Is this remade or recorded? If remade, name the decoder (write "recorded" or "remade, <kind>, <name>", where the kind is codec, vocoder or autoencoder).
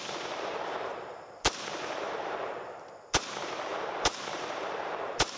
remade, vocoder, BigVGAN v2